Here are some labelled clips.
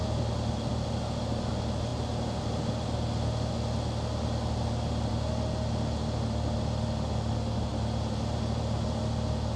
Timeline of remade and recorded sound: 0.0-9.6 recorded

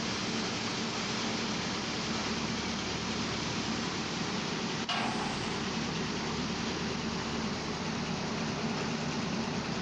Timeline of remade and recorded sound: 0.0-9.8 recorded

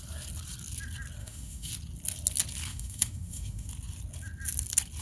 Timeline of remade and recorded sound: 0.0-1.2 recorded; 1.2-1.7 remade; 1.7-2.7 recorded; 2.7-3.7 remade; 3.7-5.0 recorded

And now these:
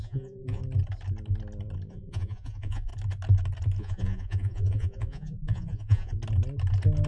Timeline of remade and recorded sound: 0.0-0.6 remade; 0.6-1.9 recorded; 1.9-2.9 remade; 2.9-3.8 recorded; 3.8-6.1 remade; 6.1-7.1 recorded